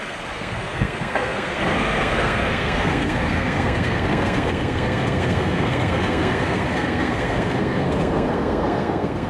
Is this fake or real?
fake